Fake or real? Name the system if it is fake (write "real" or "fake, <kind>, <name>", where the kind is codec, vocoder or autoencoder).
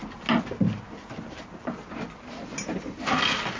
real